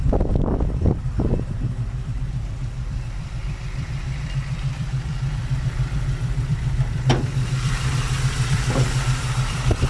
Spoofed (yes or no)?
yes